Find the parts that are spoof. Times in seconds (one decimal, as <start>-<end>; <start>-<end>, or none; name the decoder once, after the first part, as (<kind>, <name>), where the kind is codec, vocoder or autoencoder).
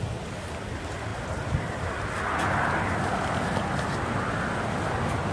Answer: none